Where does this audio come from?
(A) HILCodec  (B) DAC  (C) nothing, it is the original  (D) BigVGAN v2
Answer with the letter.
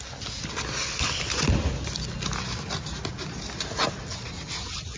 C